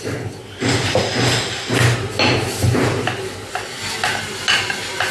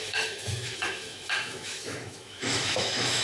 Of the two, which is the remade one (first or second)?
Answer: second